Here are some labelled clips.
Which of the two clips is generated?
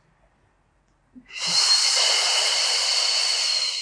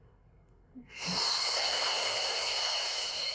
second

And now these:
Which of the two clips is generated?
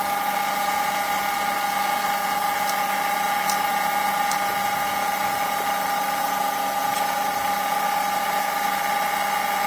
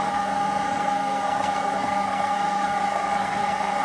second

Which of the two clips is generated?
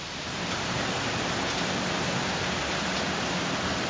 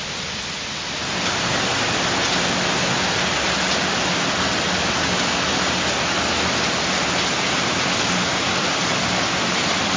first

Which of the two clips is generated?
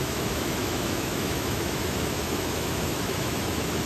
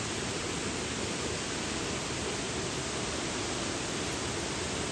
first